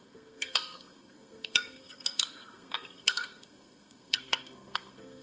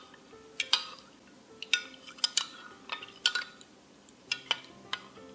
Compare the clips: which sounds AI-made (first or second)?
first